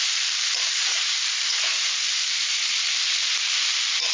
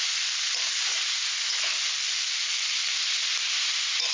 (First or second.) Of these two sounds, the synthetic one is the first